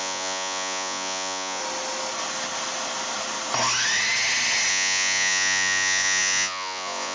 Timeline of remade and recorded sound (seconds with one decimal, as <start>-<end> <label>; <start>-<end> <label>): 0.0-1.6 remade; 1.6-4.7 recorded; 4.7-7.1 remade